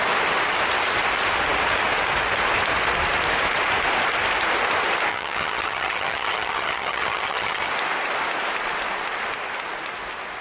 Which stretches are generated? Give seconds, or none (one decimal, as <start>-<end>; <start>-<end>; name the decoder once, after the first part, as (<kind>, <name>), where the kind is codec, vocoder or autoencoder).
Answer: 5.1-7.7 (vocoder, HiFi-GAN)